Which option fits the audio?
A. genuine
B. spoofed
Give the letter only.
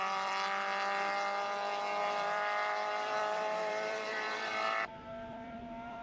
B